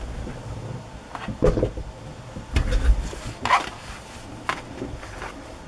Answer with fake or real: real